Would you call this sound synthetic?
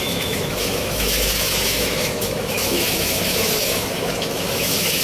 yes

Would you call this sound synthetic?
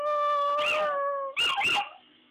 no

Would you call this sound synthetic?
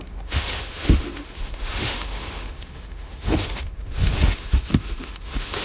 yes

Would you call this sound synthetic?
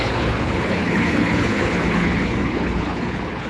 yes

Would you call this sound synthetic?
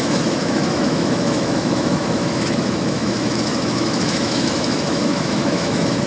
yes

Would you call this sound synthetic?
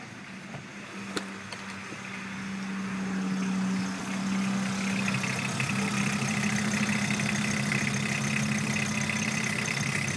no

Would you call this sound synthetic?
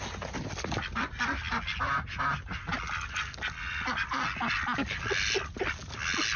no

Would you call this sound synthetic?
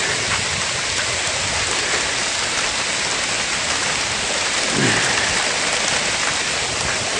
no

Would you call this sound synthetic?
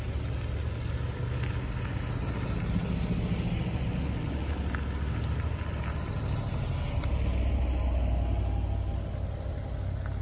no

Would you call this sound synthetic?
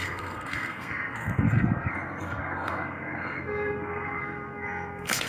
yes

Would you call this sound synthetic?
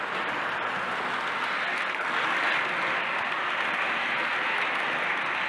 no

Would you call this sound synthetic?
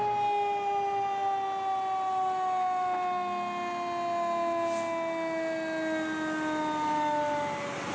no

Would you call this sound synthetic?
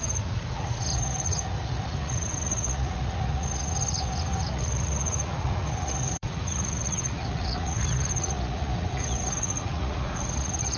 yes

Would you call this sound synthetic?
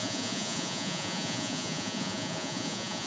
yes